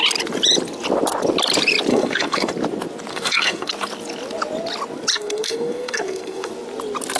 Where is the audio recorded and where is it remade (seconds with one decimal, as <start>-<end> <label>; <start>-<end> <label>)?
0.0-1.9 recorded; 1.9-2.5 remade; 2.5-3.1 recorded; 3.1-3.7 remade; 3.7-5.1 recorded; 5.1-6.5 remade; 6.5-7.2 recorded